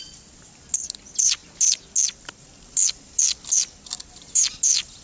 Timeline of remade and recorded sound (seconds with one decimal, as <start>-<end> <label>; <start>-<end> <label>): 0.0-5.0 recorded